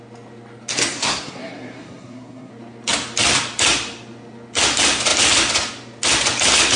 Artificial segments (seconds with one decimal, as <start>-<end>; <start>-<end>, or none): 0.9-2.5